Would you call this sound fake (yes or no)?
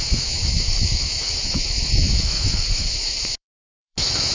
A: yes